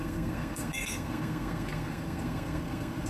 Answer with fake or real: fake